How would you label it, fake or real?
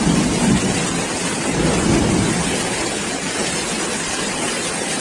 real